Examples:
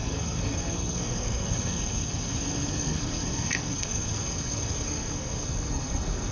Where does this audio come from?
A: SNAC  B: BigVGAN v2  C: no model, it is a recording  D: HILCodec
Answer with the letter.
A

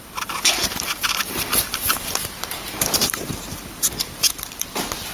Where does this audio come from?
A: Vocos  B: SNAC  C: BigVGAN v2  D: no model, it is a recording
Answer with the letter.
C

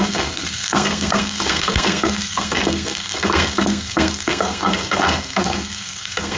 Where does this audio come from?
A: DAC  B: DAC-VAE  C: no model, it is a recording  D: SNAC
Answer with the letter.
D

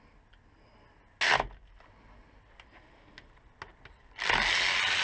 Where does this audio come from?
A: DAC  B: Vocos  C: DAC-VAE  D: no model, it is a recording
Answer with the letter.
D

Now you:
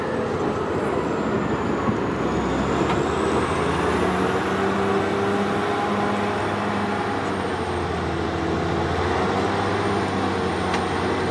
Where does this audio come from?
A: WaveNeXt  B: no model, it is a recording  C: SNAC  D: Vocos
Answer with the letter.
B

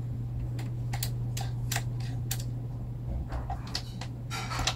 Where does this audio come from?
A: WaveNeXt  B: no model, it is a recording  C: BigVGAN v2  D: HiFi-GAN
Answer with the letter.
B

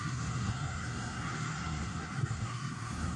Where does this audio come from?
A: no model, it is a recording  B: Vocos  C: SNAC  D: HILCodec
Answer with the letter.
C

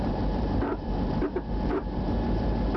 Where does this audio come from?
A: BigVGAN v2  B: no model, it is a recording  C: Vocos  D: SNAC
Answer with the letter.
A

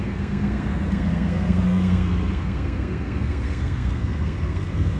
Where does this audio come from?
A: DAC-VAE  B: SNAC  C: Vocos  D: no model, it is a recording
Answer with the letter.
B